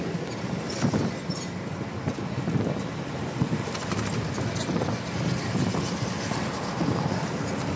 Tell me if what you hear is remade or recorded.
recorded